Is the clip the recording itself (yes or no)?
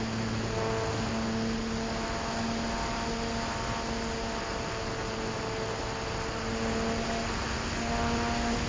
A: yes